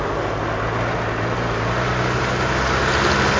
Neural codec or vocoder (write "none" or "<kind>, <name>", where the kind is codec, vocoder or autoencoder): none